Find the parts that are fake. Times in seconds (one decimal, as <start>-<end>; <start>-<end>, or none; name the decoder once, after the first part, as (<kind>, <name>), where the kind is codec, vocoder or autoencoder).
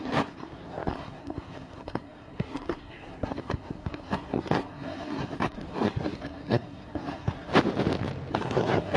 0.0-7.5 (codec, SNAC); 8.3-9.0